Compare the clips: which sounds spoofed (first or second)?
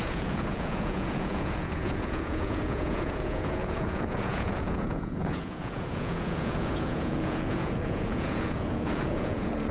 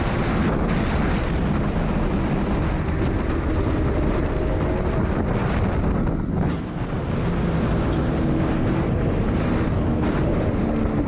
first